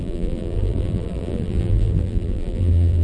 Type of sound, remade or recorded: remade